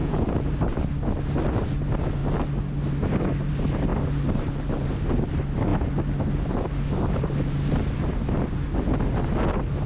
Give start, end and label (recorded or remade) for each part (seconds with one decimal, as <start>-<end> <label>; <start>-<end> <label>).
0.0-0.5 remade; 0.5-9.9 recorded